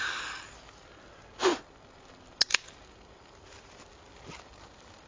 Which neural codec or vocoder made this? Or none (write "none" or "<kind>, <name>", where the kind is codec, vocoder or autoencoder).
none